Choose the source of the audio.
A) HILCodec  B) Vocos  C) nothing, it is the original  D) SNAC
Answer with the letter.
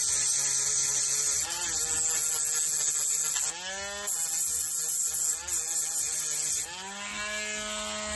C